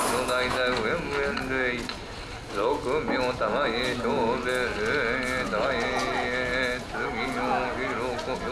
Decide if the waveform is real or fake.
real